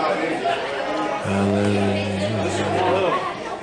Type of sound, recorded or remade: recorded